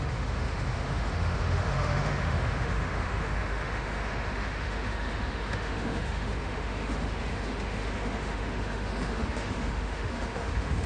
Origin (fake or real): fake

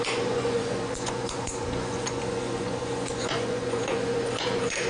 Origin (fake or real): fake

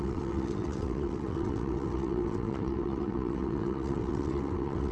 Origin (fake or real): fake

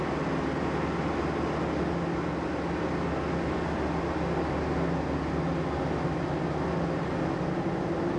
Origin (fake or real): real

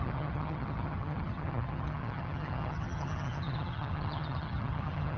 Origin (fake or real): fake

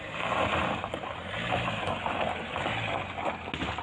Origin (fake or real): real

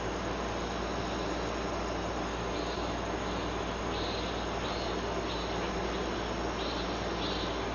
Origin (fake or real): real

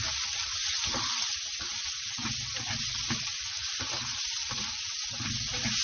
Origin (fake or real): real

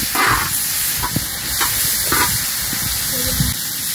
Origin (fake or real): real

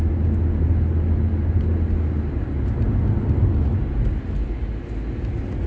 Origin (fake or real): real